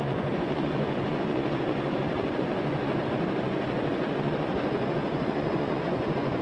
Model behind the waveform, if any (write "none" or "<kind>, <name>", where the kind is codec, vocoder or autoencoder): vocoder, Vocos